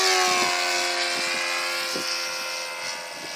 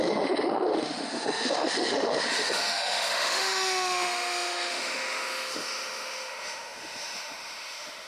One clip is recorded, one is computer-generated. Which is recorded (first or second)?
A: first